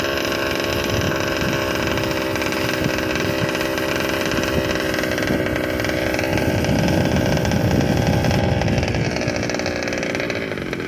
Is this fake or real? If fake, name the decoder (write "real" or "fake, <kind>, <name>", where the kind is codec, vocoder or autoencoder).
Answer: real